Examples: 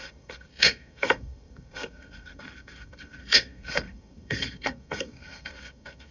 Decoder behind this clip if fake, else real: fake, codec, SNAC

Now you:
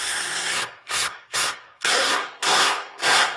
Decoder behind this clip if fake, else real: fake, codec, SNAC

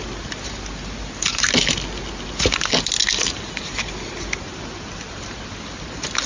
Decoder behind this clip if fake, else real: real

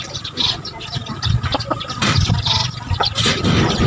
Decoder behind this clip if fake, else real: real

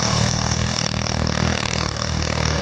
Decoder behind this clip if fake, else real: fake, codec, DAC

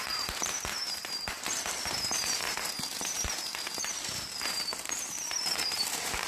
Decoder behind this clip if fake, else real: fake, vocoder, BigVGAN v2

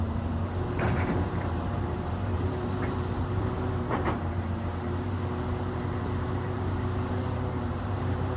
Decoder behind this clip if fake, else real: fake, vocoder, BigVGAN v2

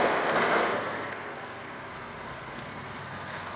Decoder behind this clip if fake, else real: fake, codec, SNAC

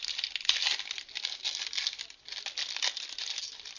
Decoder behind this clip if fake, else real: real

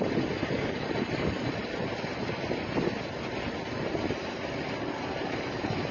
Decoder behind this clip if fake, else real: real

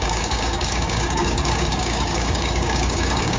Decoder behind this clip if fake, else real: fake, codec, DAC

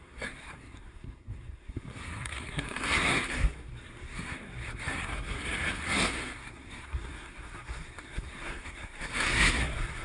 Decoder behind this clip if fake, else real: fake, codec, SNAC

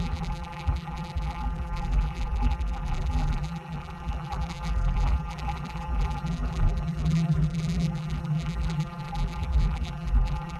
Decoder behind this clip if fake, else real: fake, vocoder, BigVGAN v2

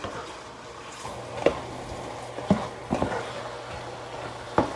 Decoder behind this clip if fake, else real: real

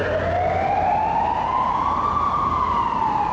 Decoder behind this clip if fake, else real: real